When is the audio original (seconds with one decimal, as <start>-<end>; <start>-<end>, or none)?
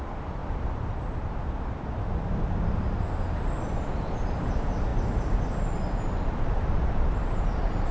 0.0-7.9